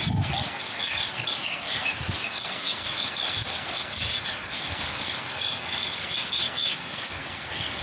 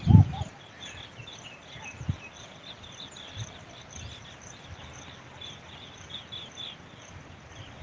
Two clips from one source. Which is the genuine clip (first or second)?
second